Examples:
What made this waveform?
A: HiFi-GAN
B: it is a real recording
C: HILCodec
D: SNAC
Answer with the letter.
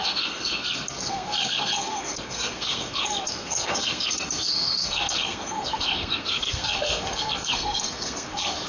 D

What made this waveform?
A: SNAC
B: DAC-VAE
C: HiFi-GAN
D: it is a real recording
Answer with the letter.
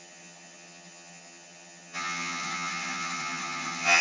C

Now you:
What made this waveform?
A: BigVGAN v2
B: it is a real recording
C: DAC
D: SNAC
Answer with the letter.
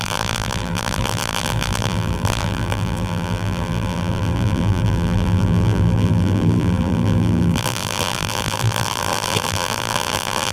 A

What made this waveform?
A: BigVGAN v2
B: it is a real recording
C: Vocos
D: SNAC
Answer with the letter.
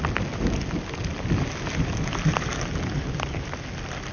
B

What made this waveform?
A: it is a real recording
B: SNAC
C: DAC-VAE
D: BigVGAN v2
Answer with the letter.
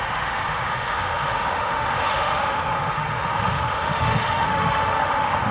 C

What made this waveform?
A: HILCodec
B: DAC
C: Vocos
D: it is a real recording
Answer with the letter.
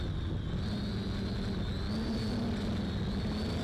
D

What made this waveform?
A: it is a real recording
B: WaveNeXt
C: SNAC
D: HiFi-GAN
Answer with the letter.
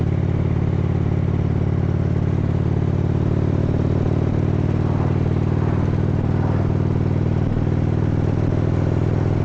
A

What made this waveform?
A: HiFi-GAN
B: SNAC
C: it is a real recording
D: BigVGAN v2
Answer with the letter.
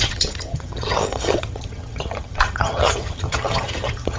A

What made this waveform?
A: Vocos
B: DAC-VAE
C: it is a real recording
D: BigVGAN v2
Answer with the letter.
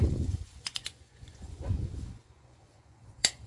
A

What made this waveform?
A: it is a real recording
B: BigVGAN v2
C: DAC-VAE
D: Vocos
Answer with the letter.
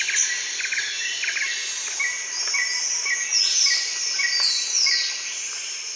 A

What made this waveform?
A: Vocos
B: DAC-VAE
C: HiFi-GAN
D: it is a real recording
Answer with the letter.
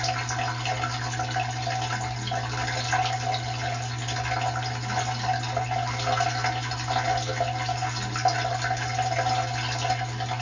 D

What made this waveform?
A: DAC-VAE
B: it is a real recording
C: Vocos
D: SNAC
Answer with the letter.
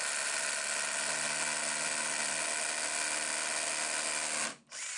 B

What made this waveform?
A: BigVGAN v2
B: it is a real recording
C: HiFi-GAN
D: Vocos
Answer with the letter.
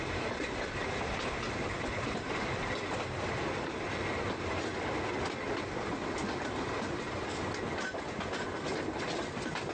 B